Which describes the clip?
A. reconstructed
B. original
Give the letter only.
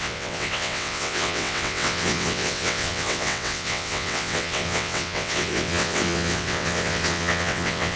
A